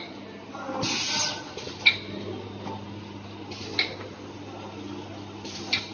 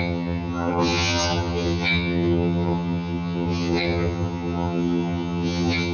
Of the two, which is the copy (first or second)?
second